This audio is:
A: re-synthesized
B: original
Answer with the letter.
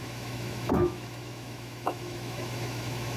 A